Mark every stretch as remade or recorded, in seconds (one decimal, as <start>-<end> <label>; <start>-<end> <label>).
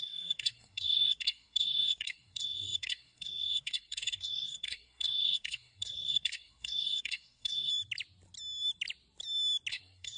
0.0-7.7 remade; 7.7-9.7 recorded; 9.7-10.2 remade